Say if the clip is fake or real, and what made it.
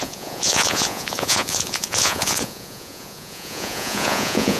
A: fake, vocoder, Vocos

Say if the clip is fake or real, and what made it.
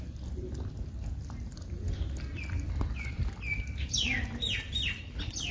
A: real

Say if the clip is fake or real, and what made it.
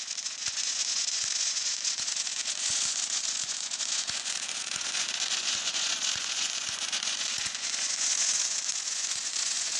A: fake, vocoder, Vocos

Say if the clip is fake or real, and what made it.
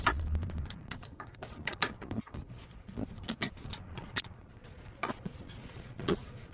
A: fake, vocoder, Vocos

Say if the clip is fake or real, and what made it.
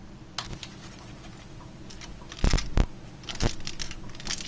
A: real